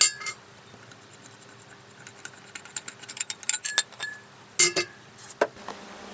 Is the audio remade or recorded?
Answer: recorded